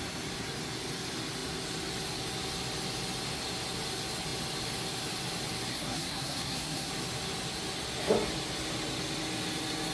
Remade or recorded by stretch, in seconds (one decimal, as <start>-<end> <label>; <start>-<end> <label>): 0.0-5.7 recorded; 5.7-6.9 remade; 6.9-9.9 recorded